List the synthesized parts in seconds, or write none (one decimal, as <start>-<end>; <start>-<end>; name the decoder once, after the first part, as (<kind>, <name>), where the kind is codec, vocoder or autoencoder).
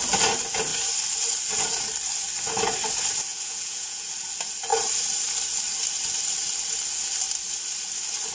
3.3-4.1 (vocoder, Vocos)